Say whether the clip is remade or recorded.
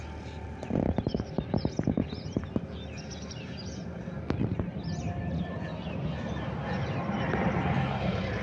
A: recorded